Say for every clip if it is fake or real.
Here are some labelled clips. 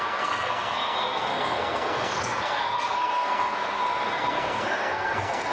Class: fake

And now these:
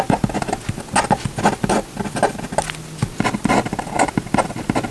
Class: real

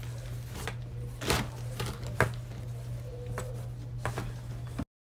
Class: real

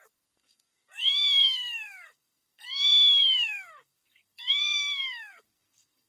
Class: fake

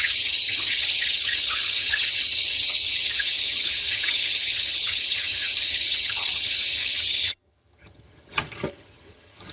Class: fake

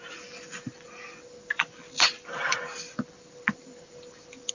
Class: fake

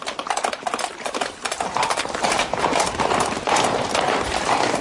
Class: fake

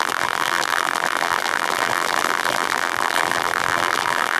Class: fake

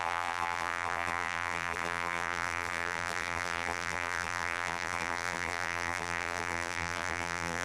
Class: fake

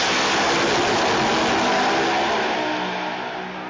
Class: real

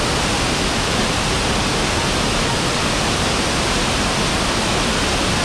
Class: real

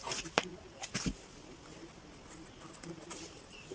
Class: real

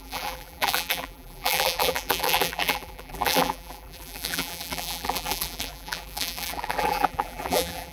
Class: fake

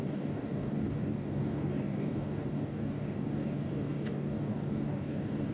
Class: fake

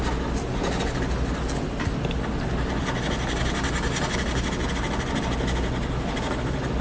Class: real